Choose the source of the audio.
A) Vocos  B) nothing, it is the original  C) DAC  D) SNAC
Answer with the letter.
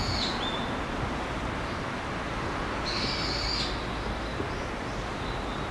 B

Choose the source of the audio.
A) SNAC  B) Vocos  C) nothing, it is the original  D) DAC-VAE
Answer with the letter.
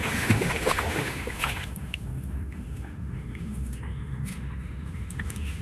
D